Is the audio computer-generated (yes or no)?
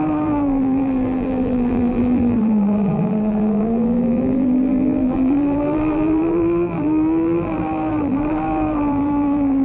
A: yes